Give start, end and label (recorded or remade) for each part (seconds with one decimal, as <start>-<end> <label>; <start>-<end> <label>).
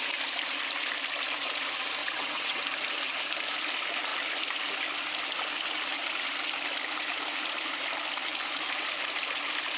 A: 0.0-2.0 recorded; 2.0-2.6 remade; 2.6-9.8 recorded